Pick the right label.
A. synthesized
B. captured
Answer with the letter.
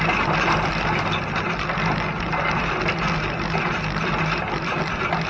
B